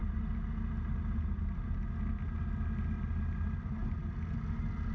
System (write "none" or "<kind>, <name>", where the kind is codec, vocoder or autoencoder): none